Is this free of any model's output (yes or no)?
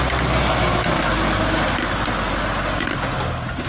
yes